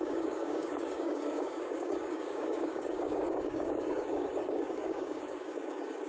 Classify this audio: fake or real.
fake